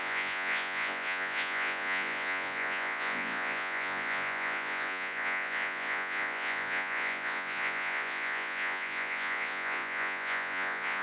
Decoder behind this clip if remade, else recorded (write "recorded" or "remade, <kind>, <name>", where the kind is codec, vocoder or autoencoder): remade, vocoder, Vocos